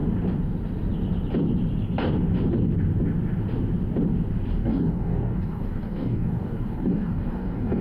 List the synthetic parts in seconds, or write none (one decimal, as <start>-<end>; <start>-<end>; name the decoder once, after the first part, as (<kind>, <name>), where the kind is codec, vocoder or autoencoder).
4.6-7.8 (codec, DAC)